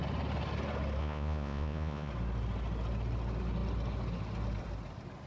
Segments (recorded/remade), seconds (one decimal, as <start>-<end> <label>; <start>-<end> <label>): 0.0-1.0 recorded; 1.0-2.1 remade; 2.1-5.3 recorded